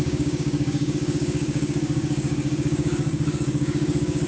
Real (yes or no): no